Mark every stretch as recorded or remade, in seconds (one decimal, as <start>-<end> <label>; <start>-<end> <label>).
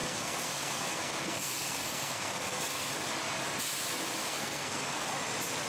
0.0-2.9 remade; 2.9-4.2 recorded; 4.2-5.1 remade; 5.1-5.7 recorded